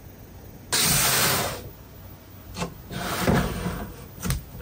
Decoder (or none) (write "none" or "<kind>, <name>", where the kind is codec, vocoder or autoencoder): none